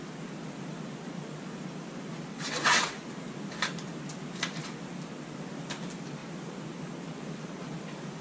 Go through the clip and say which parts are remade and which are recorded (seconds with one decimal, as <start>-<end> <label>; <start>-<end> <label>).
0.0-2.3 recorded; 2.3-2.9 remade; 2.9-8.2 recorded